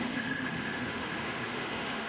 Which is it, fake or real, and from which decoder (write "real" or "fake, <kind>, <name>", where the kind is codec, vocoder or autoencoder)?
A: fake, autoencoder, DAC-VAE